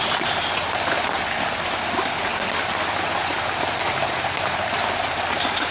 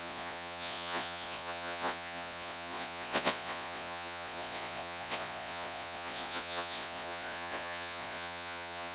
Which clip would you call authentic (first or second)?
first